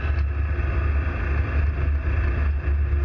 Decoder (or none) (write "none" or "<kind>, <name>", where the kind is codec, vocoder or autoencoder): none